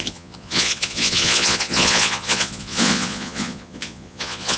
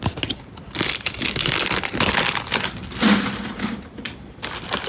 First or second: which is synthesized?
first